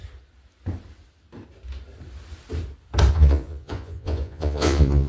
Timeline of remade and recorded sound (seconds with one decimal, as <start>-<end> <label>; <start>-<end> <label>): 0.0-3.1 recorded; 3.1-5.1 remade

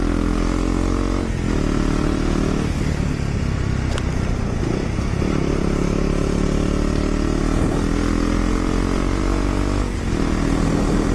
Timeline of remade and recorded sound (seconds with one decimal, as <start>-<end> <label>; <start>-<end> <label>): 0.0-11.1 recorded

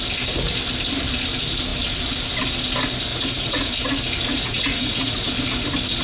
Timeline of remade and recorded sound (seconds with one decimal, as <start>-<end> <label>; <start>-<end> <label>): 0.0-3.1 recorded; 3.1-3.7 remade; 3.7-4.3 recorded; 4.3-5.3 remade; 5.3-6.0 recorded

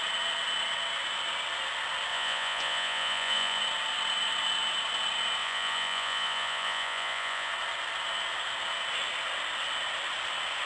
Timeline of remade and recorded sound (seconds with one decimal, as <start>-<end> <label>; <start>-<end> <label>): 0.0-2.1 recorded; 2.1-3.6 remade; 3.6-5.4 recorded; 5.4-7.5 remade; 7.5-10.7 recorded

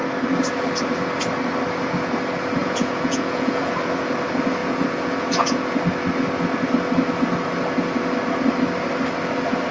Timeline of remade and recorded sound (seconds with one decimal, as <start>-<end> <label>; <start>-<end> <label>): 0.0-2.6 recorded; 2.6-3.7 remade; 3.7-4.6 recorded; 4.6-5.8 remade; 5.8-9.7 recorded

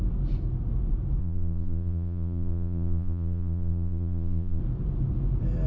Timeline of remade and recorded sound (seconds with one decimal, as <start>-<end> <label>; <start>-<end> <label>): 0.0-1.2 recorded; 1.2-4.6 remade; 4.6-5.7 recorded

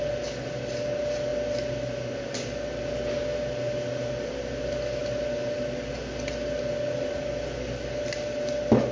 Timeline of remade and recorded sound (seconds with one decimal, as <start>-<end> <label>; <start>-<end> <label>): 0.0-8.9 recorded

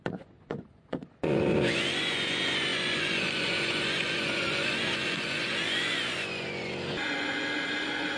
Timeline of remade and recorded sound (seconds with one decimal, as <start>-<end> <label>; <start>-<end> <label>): 0.0-8.2 remade